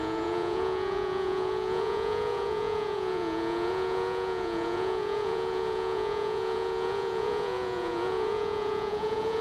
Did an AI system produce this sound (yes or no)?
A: yes